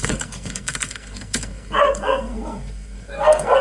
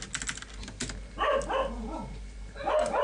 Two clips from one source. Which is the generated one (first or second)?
first